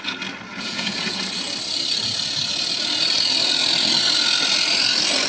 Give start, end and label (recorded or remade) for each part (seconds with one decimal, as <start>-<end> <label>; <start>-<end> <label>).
0.0-0.5 recorded; 0.5-1.4 remade; 1.4-5.3 recorded